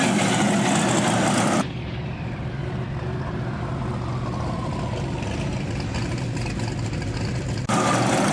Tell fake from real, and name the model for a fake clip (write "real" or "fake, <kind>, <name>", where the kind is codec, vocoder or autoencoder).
real